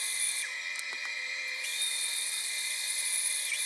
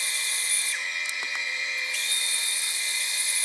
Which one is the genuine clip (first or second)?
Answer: second